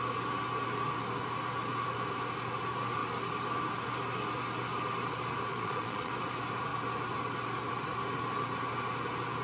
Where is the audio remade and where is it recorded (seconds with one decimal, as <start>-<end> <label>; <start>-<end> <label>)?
0.0-5.5 recorded; 5.5-6.1 remade; 6.1-9.4 recorded